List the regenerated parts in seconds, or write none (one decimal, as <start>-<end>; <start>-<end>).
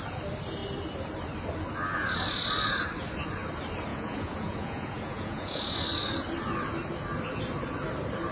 3.9-5.6